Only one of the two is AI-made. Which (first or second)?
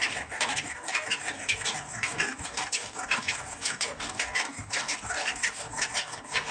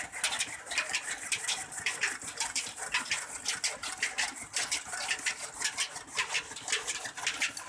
first